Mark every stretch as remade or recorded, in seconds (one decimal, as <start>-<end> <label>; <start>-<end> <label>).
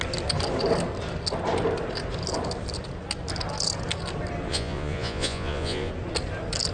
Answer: 0.0-4.5 recorded; 4.5-5.9 remade; 5.9-6.7 recorded